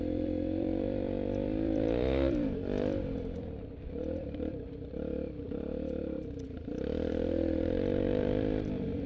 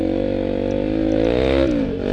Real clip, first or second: second